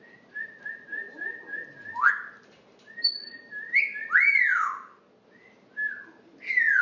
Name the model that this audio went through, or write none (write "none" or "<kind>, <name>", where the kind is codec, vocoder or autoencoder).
none